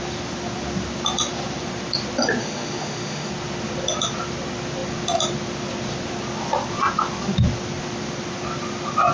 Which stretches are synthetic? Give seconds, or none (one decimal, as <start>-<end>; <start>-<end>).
2.4-3.3